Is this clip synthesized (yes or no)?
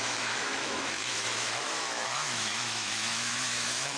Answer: yes